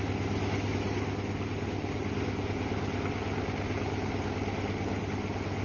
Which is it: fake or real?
real